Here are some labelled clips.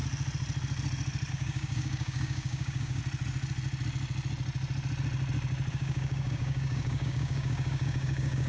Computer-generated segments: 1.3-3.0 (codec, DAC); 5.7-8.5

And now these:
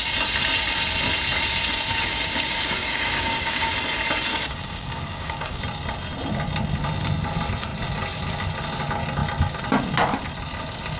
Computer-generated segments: 1.9-3.7 (codec, DAC); 4.3-5.6

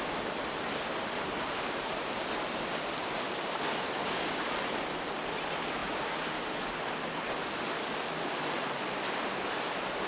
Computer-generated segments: 4.0-4.5 (codec, DAC)